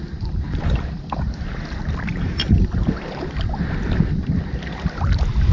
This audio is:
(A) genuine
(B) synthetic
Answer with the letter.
A